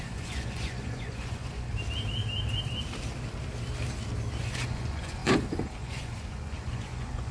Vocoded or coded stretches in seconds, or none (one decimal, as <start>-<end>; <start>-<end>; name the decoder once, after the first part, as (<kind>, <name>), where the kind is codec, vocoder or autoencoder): 0.0-1.7 (vocoder, Vocos); 4.4-7.3